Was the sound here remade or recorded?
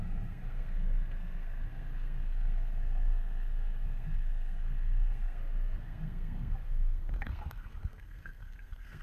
remade